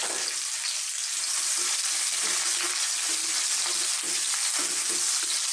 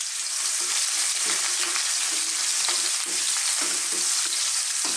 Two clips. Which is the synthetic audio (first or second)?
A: second